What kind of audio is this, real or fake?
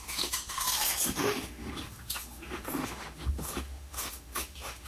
fake